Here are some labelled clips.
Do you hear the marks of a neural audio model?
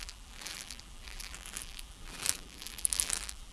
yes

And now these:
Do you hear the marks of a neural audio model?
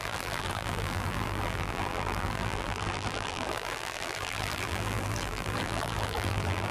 yes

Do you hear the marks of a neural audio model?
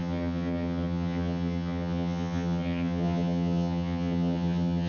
yes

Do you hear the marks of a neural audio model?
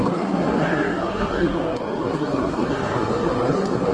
yes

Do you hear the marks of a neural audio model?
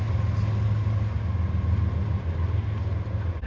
no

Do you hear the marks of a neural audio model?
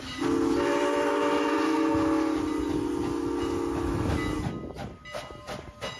no